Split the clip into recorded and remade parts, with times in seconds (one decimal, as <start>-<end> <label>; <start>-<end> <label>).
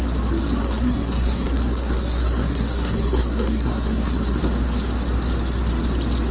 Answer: 0.0-0.6 recorded; 0.6-4.4 remade; 4.4-6.3 recorded